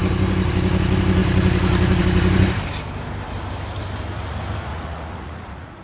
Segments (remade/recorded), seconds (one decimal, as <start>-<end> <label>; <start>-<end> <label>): 0.0-4.7 recorded; 4.7-5.8 remade